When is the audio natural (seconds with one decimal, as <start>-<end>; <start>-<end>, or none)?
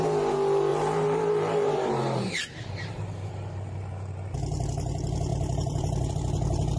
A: 0.0-0.7; 3.0-5.3; 6.1-6.8